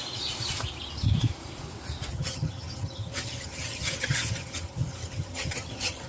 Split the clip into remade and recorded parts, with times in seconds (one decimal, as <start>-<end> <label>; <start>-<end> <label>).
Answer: 0.0-2.1 recorded; 2.1-6.1 remade